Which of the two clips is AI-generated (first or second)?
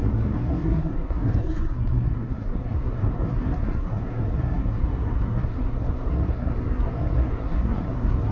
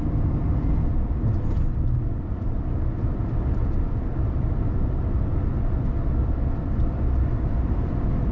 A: first